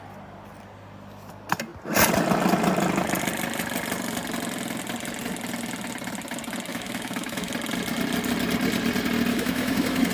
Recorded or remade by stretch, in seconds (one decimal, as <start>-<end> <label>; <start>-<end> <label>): 0.0-6.7 recorded; 6.7-7.5 remade; 7.5-9.3 recorded; 9.3-10.1 remade